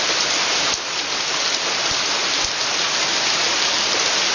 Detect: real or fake real